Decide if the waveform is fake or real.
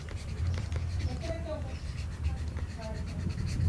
real